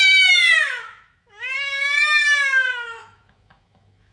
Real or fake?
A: fake